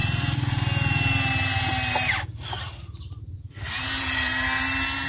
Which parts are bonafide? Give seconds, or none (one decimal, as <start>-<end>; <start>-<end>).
0.0-5.1